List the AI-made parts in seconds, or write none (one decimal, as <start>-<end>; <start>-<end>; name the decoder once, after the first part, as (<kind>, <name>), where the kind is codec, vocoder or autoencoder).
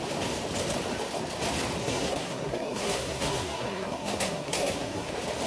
1.8-5.1 (codec, SNAC)